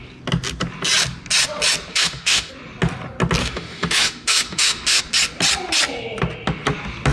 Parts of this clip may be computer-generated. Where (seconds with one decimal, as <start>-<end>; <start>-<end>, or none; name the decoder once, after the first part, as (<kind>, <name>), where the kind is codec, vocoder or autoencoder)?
1.9-2.5 (autoencoder, DAC-VAE); 3.4-5.0